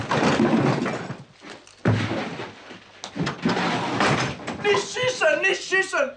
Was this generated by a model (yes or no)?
no